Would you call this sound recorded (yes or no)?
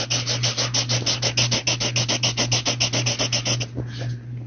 yes